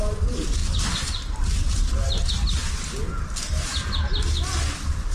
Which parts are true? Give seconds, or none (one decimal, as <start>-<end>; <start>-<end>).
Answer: 2.6-5.1